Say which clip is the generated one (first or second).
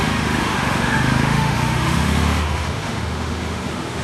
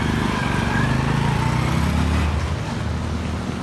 first